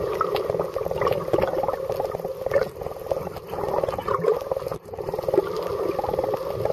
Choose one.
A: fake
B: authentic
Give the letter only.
B